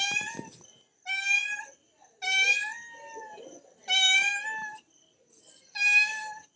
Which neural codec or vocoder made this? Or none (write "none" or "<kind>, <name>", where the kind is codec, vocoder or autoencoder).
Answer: none